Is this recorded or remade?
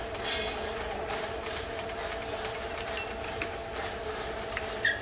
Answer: recorded